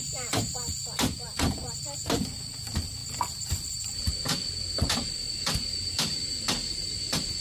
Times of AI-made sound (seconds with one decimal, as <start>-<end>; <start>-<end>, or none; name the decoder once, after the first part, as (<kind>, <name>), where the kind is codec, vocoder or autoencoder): 0.0-7.4 (vocoder, BigVGAN v2)